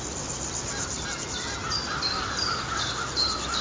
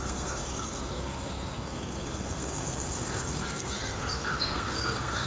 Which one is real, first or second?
first